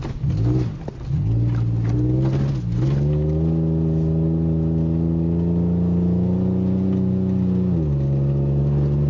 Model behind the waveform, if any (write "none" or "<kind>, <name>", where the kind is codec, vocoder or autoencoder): none